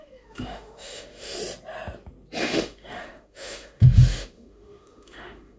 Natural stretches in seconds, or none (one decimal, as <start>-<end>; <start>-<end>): 1.4-2.4